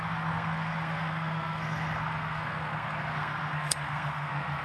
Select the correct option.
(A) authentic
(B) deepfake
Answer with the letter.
B